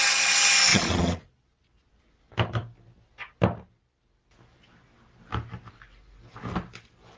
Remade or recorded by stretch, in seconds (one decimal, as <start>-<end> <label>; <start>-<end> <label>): 0.0-0.7 recorded; 0.7-2.2 remade; 2.2-7.2 recorded